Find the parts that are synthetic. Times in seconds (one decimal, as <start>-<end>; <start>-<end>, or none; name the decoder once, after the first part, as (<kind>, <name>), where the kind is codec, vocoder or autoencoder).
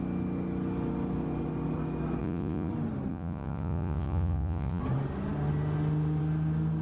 2.2-2.7 (vocoder, Vocos); 3.1-4.8